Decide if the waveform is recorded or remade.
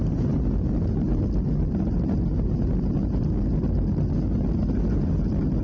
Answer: recorded